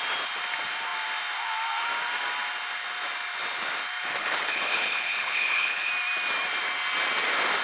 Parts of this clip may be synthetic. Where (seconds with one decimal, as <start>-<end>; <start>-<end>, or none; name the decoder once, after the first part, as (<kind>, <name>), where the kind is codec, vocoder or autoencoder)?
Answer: 4.2-5.9 (codec, HILCodec)